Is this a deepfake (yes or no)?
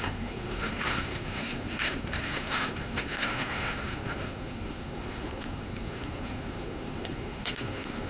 yes